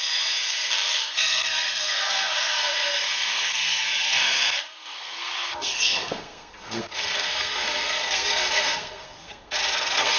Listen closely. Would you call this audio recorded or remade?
remade